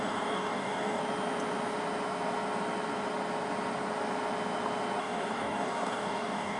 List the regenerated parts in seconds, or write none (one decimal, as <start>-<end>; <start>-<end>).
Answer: 0.0-1.0; 5.0-6.6